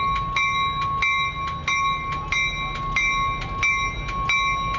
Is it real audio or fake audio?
real